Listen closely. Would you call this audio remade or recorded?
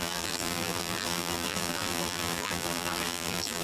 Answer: remade